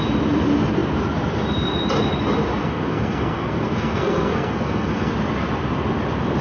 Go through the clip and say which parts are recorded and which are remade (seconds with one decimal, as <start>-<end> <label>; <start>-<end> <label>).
0.0-2.6 recorded; 2.6-5.1 remade; 5.1-6.4 recorded